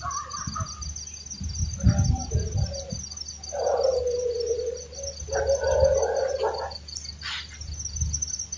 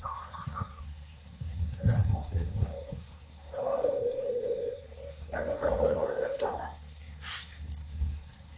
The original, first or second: first